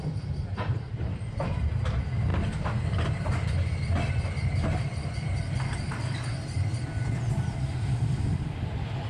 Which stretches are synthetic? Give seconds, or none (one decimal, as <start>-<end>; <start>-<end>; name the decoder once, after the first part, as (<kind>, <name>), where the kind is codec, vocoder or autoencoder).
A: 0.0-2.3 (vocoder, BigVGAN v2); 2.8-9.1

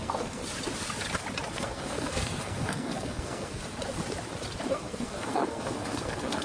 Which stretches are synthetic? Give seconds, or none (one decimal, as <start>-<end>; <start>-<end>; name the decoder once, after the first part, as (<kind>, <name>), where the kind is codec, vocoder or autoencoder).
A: 0.0-0.4 (codec, SNAC); 1.5-3.6; 4.7-6.4

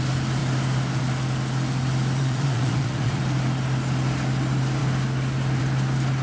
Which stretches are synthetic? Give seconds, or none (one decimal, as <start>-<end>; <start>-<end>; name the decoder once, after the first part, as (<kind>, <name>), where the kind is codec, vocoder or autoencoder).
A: 2.2-3.2 (vocoder, Vocos)

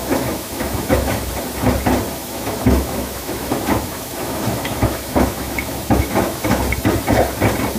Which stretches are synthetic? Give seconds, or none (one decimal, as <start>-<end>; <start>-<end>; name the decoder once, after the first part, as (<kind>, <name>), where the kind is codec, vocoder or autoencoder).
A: 0.0-1.3 (autoencoder, DAC-VAE); 2.2-6.6

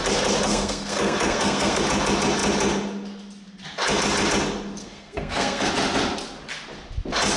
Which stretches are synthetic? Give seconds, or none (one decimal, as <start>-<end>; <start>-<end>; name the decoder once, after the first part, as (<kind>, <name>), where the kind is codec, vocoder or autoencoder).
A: 0.5-1.8 (codec, SNAC); 4.8-5.7

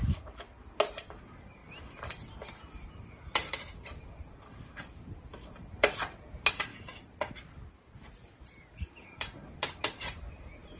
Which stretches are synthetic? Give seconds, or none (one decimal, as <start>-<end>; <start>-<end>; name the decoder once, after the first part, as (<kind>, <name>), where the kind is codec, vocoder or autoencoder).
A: 0.0-6.7 (vocoder, BigVGAN v2); 7.7-10.8